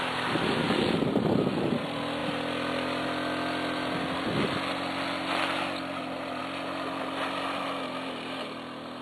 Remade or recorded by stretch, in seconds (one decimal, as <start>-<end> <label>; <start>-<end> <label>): 0.0-9.0 recorded